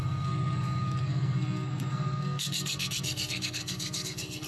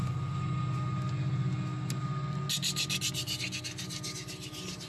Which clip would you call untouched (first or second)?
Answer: second